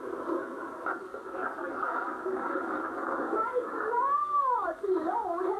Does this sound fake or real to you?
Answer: fake